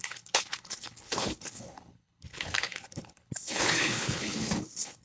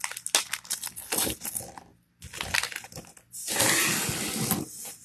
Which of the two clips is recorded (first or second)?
second